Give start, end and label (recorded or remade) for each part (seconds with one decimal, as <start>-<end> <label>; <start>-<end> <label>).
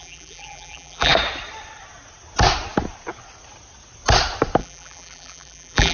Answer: 0.0-1.1 remade; 1.1-4.6 recorded; 4.6-5.9 remade